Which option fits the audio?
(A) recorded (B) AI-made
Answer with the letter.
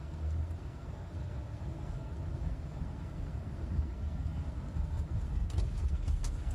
B